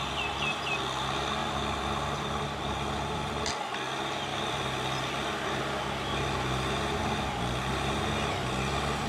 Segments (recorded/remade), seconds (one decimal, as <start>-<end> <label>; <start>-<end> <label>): 0.0-1.4 recorded; 1.4-3.8 remade; 3.8-4.3 recorded; 4.3-5.6 remade; 5.6-9.1 recorded